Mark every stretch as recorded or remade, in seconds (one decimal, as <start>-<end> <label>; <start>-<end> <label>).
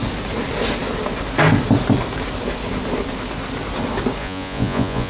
0.0-4.2 recorded; 4.2-5.1 remade